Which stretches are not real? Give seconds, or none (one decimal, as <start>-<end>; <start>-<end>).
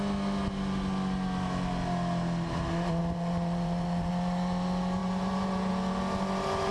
3.0-4.1; 5.0-5.7